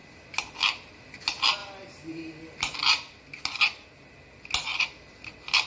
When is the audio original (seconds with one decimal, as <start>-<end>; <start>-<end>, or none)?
0.0-5.7